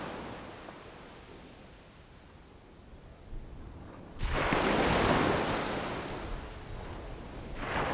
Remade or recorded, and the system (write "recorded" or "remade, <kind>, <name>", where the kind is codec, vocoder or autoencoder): recorded